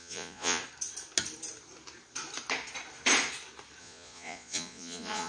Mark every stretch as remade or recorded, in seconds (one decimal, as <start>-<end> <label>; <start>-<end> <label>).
0.0-0.6 remade; 0.6-3.8 recorded; 3.8-5.3 remade